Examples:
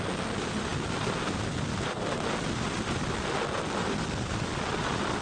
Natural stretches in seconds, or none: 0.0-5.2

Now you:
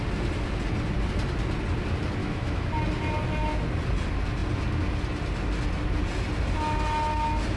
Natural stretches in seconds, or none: 0.0-2.2; 2.7-7.6

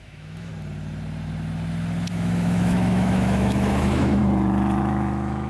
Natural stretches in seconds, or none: 0.5-2.1; 4.2-4.8

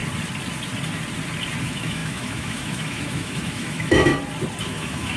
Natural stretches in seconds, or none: 0.0-1.6; 4.1-4.6

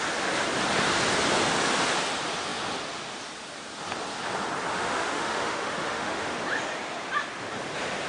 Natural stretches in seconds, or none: 0.0-4.7; 6.4-8.1